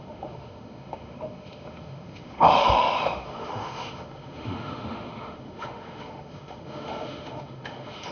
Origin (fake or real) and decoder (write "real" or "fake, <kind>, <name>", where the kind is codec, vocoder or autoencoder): fake, autoencoder, DAC-VAE